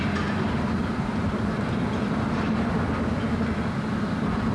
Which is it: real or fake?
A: real